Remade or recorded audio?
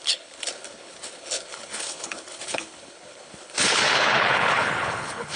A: remade